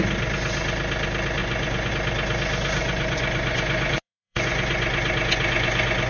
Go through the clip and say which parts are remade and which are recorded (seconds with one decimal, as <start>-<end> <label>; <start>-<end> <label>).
0.0-1.4 recorded; 1.4-1.9 remade; 1.9-2.8 recorded; 2.8-6.1 remade